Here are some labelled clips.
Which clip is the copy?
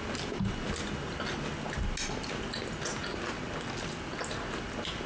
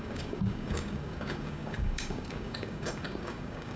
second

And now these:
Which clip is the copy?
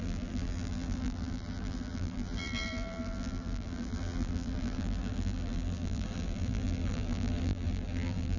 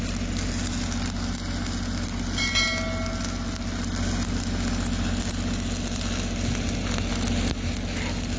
first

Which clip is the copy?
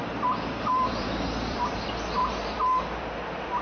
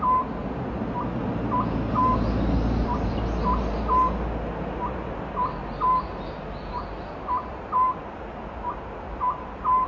first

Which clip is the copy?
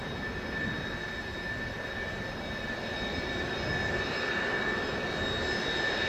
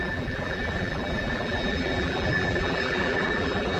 second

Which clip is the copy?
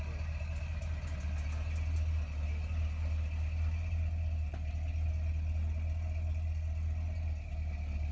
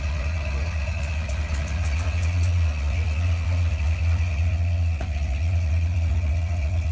second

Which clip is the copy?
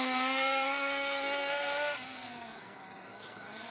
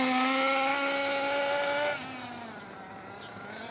first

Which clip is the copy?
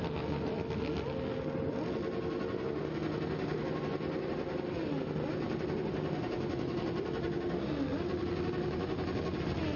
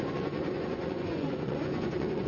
second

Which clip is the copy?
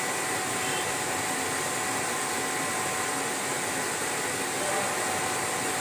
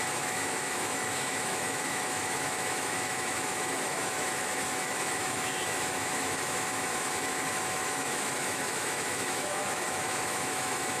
second